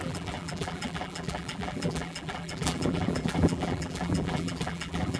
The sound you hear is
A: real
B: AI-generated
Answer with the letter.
B